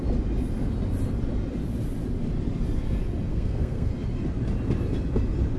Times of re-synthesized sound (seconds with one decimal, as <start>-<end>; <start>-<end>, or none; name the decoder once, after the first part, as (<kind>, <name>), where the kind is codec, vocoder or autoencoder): 3.3-3.9 (codec, SNAC)